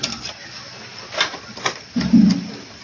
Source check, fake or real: real